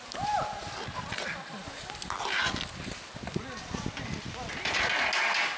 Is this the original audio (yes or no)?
yes